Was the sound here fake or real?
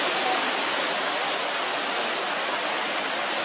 real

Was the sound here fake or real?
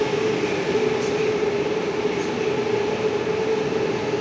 real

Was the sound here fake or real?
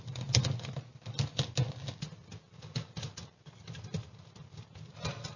real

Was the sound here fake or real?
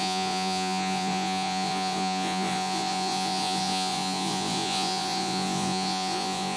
fake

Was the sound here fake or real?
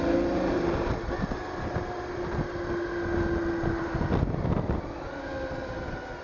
real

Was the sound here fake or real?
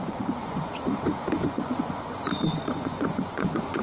fake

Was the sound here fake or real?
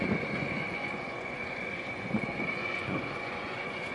fake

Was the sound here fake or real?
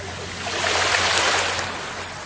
real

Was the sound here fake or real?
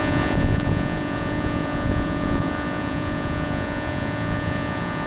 fake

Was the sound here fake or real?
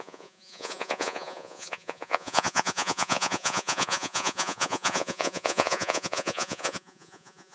fake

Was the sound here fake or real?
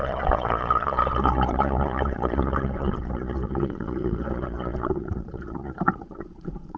fake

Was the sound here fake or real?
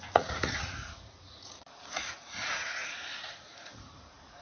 fake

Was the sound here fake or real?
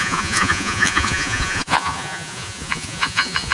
fake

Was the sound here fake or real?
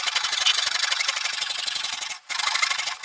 fake